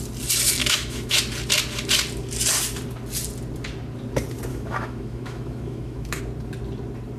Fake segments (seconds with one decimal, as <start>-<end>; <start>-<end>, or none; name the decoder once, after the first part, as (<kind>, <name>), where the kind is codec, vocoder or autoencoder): 0.6-1.2 (autoencoder, DAC-VAE); 4.5-6.2